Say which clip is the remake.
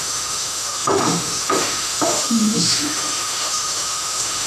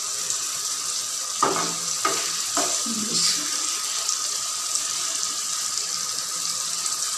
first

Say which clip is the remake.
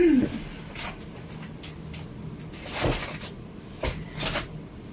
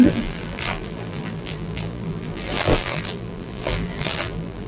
second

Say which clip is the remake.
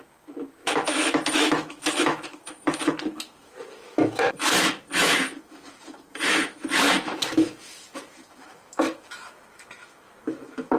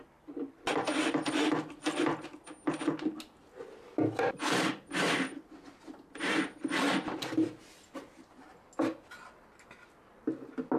first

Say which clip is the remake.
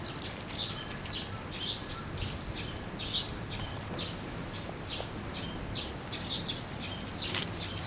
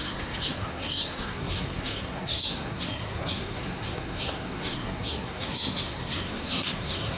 second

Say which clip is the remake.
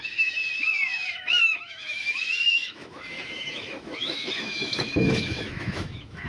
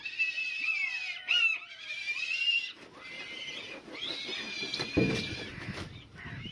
first